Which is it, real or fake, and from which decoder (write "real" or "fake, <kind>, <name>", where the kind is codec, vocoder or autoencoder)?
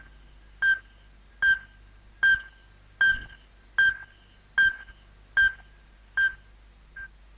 real